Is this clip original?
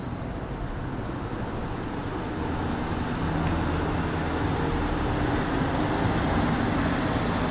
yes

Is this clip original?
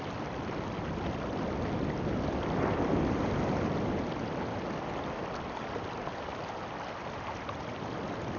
yes